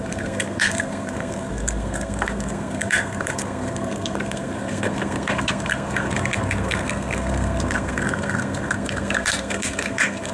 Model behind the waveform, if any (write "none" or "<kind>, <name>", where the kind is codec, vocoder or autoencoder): codec, SNAC